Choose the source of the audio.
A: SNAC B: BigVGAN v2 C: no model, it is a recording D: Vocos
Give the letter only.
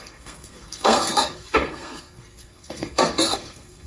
A